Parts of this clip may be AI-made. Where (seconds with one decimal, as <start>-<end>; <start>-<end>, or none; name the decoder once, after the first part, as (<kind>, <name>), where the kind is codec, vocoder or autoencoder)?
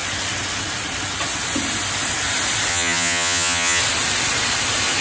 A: 2.7-3.8 (vocoder, HiFi-GAN)